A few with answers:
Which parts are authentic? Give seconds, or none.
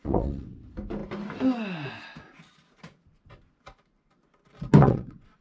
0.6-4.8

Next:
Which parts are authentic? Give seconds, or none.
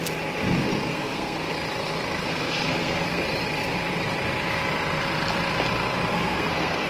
0.0-0.9; 1.5-2.2; 3.2-6.1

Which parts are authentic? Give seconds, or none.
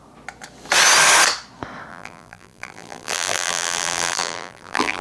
0.0-1.9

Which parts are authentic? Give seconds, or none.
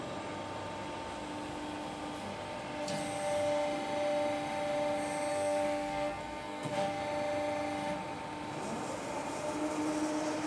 0.0-5.3; 7.0-10.5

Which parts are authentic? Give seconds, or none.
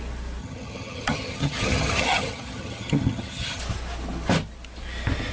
0.0-0.4; 3.6-5.3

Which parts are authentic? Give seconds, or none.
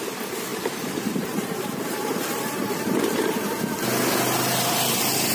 0.0-0.5; 3.0-5.3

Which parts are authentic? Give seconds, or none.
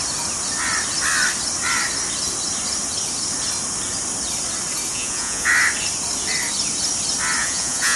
0.0-4.9; 5.5-7.4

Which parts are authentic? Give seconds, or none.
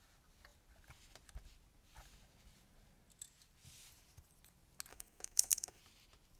0.0-4.9; 5.8-6.4